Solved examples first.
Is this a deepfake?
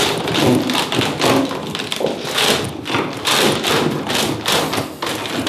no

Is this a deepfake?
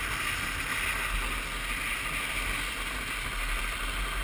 no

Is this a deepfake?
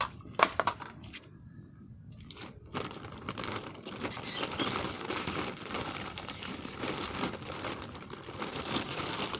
yes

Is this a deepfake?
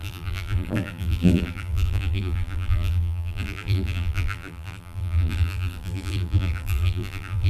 yes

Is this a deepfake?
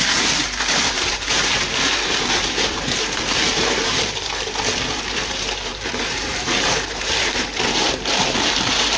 yes